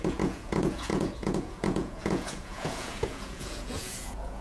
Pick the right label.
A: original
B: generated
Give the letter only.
B